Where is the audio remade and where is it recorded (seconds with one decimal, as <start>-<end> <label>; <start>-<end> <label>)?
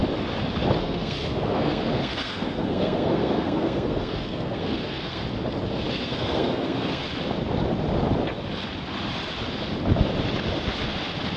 0.0-0.8 recorded; 0.8-5.2 remade; 5.2-5.9 recorded; 5.9-7.0 remade; 7.0-11.4 recorded